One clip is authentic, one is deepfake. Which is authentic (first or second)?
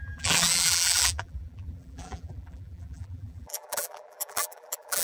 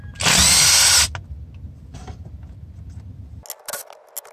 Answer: second